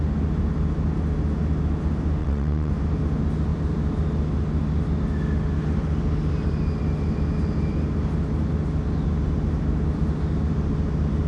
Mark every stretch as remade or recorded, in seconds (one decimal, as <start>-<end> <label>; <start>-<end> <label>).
0.0-2.2 recorded; 2.2-2.7 remade; 2.7-11.3 recorded